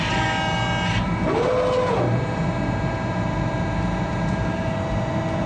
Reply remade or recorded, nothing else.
recorded